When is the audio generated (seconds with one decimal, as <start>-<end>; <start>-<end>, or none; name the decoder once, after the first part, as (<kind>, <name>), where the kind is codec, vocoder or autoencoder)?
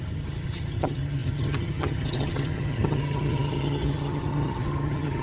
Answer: 0.0-5.2 (vocoder, HiFi-GAN)